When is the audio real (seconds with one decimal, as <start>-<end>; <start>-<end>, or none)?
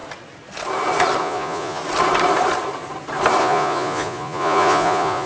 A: 0.0-1.2; 1.8-3.4